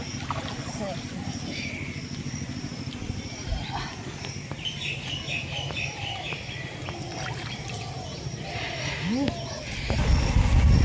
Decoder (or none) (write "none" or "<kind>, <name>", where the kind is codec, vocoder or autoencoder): none